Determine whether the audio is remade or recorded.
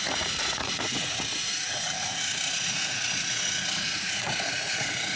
remade